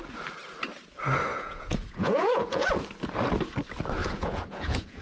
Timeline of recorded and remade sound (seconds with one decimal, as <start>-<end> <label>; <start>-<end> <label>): 0.0-1.3 recorded; 1.3-2.7 remade; 2.7-4.0 recorded; 4.0-5.0 remade

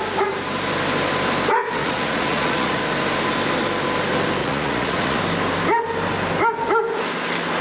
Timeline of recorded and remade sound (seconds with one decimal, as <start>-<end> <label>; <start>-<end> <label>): 0.0-1.8 recorded; 1.8-2.8 remade; 2.8-4.4 recorded; 4.4-5.2 remade; 5.2-7.6 recorded

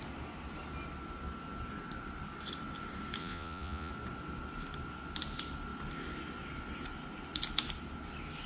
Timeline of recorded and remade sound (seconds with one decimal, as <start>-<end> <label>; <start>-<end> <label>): 0.0-3.2 recorded; 3.2-3.9 remade; 3.9-8.5 recorded